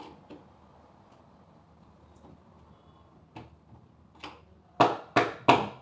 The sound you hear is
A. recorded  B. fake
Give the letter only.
A